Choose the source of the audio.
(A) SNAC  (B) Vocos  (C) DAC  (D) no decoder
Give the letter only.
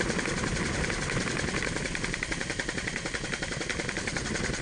D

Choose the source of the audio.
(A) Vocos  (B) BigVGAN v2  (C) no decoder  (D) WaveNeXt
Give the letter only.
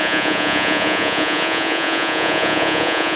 A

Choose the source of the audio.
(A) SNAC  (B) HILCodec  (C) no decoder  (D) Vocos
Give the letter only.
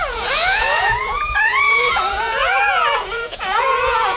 D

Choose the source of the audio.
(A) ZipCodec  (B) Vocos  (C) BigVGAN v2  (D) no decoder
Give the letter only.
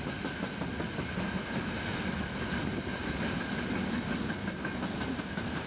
D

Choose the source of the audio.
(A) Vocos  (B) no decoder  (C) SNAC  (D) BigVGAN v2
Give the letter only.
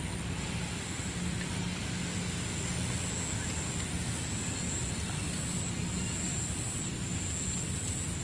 B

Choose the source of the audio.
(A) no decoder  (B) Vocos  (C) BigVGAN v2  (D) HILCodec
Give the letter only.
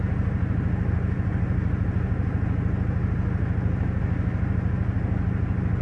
A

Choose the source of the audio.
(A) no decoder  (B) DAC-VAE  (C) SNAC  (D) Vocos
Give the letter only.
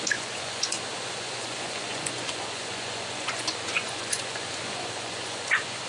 D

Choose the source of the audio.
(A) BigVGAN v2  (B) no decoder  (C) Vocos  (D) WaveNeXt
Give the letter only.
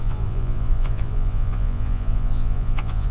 C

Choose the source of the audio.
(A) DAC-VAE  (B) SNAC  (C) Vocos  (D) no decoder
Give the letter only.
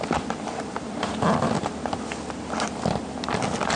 D